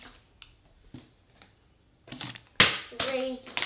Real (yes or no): yes